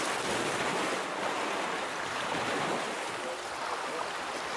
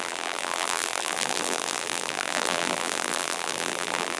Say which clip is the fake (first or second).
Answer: second